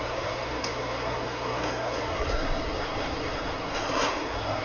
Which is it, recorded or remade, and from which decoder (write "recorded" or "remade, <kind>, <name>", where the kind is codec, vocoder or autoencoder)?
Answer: remade, codec, SNAC